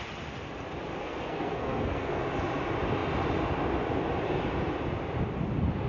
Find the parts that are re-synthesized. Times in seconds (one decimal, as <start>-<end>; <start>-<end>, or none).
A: 1.0-2.2